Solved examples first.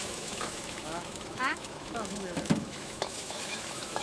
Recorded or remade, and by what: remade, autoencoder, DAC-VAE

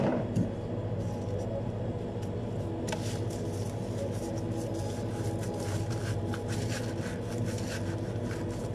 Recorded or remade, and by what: recorded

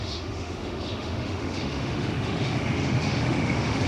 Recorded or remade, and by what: remade, autoencoder, DAC-VAE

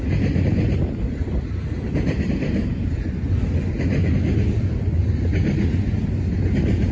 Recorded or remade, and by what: recorded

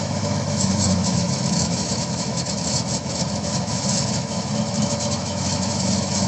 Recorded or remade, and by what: remade, autoencoder, DAC-VAE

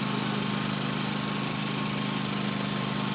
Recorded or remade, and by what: recorded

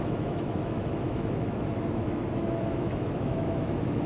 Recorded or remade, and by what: remade, autoencoder, DAC-VAE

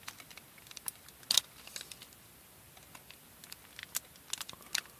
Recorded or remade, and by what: recorded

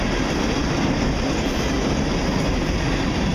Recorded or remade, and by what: recorded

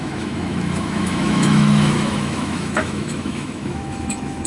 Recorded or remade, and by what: remade, autoencoder, DAC-VAE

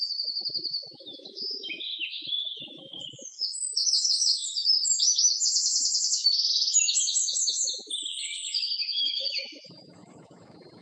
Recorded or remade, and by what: remade, autoencoder, DAC-VAE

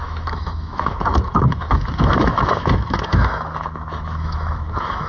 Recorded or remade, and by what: remade, autoencoder, DAC-VAE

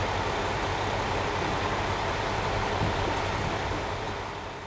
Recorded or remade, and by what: recorded